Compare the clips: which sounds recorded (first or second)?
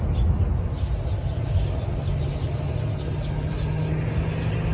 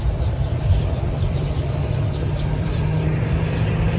first